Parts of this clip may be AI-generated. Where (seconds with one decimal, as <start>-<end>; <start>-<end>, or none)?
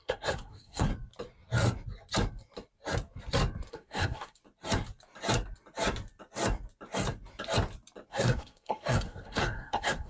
0.0-0.9; 3.7-4.4; 8.1-10.1